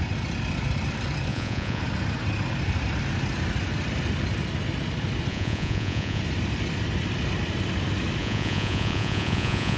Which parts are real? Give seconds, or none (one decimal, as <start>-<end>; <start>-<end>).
0.0-1.3; 1.8-5.3; 6.2-8.2